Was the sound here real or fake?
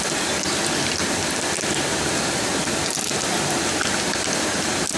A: real